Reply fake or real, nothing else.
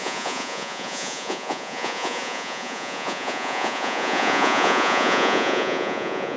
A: fake